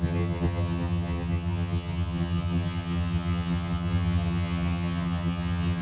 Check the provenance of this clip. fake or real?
fake